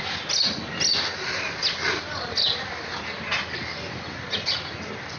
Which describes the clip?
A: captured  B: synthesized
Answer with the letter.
A